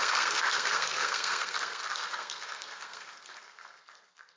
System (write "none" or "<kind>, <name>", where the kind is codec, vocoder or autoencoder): codec, SNAC